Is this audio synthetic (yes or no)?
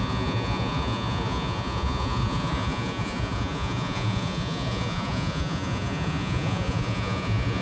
yes